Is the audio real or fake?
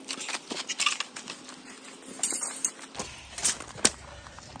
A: real